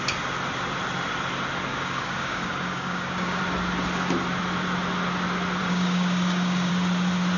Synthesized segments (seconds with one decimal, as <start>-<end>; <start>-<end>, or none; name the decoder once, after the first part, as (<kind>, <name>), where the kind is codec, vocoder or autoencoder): 1.7-3.4 (codec, DAC); 5.6-6.7